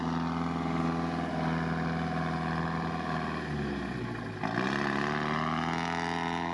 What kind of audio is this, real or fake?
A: real